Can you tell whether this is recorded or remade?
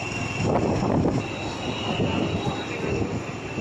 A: recorded